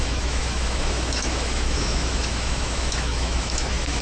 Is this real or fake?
fake